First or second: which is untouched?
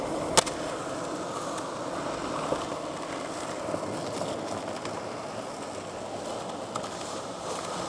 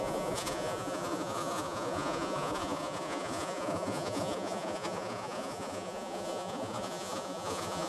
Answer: first